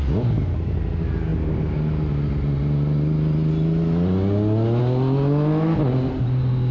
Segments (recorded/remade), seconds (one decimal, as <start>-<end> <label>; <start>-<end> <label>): 0.0-6.7 recorded

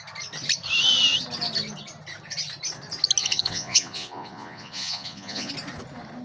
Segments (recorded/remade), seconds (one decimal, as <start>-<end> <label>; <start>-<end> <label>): 0.0-3.2 recorded; 3.2-5.5 remade; 5.5-6.2 recorded